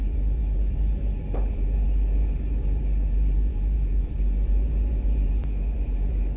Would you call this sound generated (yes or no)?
yes